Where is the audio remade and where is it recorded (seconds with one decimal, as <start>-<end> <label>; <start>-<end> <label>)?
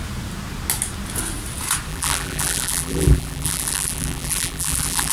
0.0-1.9 recorded; 1.9-5.1 remade